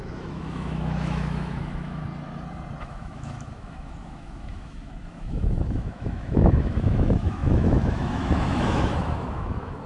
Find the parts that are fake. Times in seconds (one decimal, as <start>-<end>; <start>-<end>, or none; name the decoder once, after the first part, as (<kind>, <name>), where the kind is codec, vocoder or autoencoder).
0.0-2.0 (autoencoder, DAC-VAE); 2.8-9.9